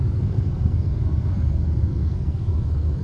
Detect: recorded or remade remade